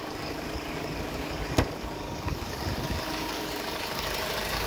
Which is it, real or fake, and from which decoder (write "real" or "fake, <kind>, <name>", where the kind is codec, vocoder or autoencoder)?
fake, codec, DAC